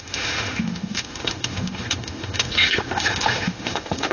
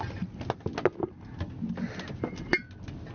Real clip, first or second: second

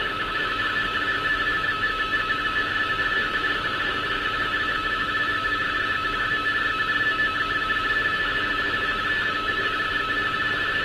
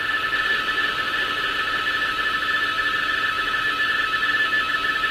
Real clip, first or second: second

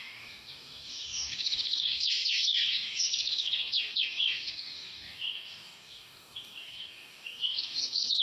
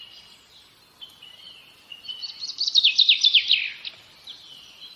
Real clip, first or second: second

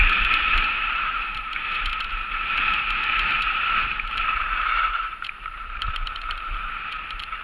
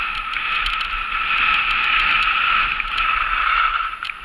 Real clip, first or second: second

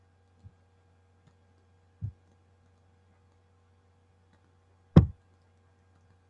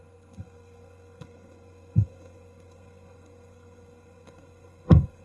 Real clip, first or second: first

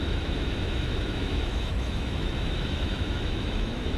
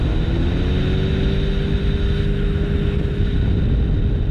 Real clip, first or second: second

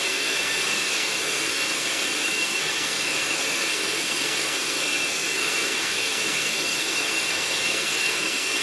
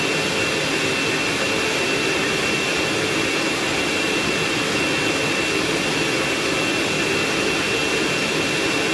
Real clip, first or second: second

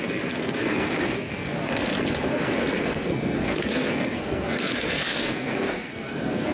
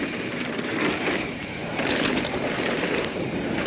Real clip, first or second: second